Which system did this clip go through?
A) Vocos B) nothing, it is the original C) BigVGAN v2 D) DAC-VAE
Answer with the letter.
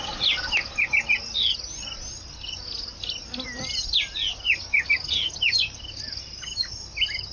B